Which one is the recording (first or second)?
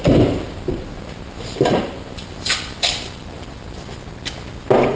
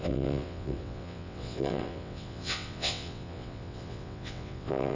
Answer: first